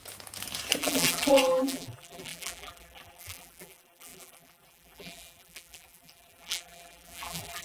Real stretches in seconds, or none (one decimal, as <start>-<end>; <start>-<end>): 0.0-0.8